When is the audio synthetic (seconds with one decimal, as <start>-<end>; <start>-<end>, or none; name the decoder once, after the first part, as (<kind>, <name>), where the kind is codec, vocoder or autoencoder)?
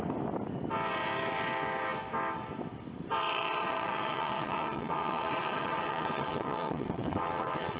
3.2-7.8 (vocoder, WaveNeXt)